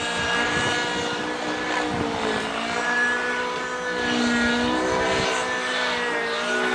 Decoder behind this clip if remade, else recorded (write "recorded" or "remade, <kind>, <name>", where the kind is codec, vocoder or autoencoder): recorded